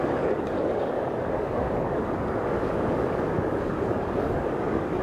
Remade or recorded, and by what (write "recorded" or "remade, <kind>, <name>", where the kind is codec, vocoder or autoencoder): remade, codec, DAC